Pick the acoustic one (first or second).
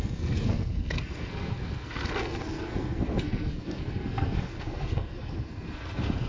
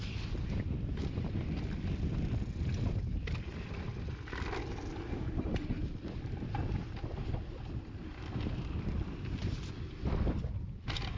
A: second